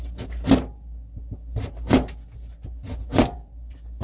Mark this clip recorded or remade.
recorded